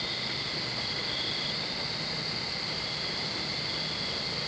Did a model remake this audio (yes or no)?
no